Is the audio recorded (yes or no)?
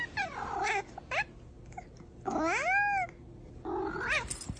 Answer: yes